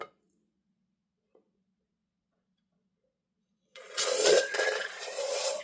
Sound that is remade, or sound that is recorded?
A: remade